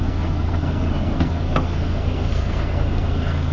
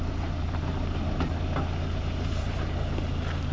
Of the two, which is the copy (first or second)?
first